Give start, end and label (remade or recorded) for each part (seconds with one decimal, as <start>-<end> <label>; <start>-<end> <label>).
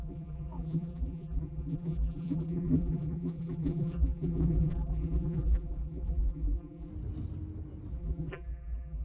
0.0-6.9 remade; 6.9-7.9 recorded; 7.9-9.0 remade